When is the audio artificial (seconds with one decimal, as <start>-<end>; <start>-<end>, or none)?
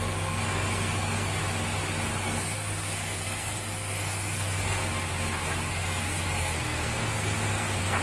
0.0-1.4; 2.1-4.8; 5.7-8.0